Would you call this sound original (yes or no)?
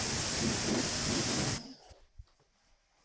yes